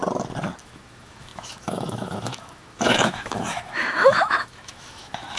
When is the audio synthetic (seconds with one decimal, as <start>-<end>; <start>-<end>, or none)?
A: 0.6-5.4